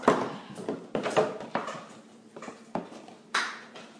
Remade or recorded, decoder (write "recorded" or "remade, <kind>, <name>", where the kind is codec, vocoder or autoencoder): recorded